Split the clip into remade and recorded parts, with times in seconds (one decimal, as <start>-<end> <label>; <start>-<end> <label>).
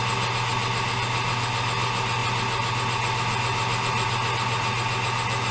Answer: 0.0-5.5 recorded